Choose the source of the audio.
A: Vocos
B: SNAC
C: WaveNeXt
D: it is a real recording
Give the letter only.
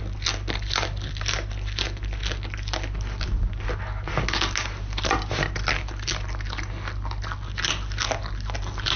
D